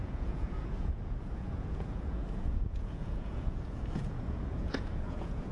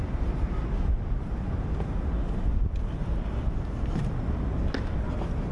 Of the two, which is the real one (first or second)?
second